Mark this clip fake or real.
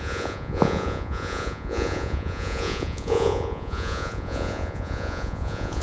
fake